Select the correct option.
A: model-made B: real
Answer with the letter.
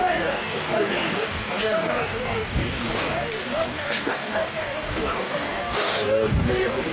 A